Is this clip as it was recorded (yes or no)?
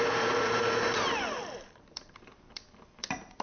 no